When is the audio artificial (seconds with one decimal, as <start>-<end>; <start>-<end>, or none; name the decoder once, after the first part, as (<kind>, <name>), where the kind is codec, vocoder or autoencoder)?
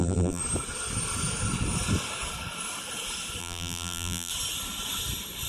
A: 0.0-0.4 (vocoder, BigVGAN v2); 3.4-4.3